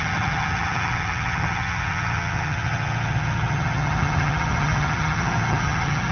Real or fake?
fake